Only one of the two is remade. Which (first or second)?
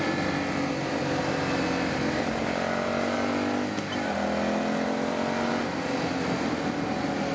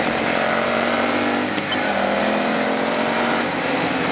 second